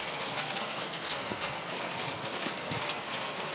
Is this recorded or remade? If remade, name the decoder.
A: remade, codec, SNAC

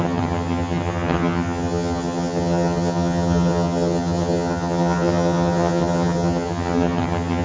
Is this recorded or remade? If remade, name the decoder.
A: remade, vocoder, HiFi-GAN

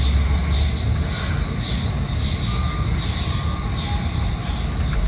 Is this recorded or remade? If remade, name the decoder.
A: recorded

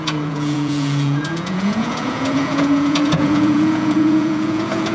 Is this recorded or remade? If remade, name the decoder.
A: remade, vocoder, Vocos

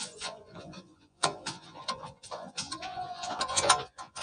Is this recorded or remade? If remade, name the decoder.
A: remade, vocoder, Vocos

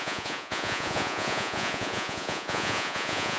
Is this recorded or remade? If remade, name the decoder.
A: remade, vocoder, Vocos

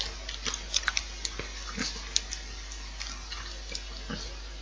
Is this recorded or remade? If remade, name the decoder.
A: recorded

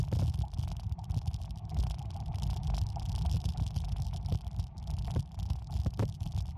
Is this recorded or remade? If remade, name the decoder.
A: recorded